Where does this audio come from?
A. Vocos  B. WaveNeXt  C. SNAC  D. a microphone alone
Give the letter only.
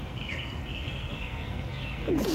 C